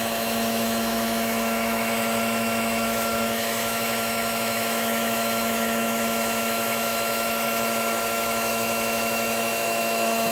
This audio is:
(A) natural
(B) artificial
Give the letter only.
B